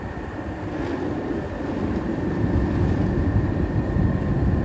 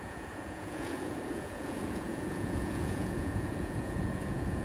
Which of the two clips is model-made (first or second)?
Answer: second